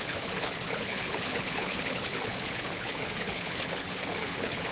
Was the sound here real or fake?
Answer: fake